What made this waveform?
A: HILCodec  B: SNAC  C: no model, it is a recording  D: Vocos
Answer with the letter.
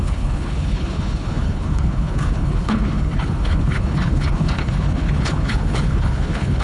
A